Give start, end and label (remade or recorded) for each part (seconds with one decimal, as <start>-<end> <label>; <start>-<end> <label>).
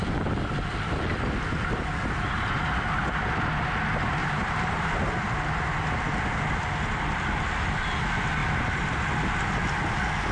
0.0-4.2 recorded; 4.2-5.0 remade; 5.0-10.3 recorded